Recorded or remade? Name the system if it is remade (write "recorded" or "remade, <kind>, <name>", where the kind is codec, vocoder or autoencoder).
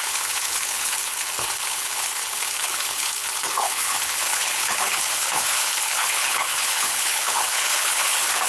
remade, codec, HILCodec